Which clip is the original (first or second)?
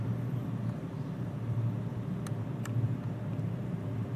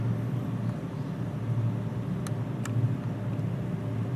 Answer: second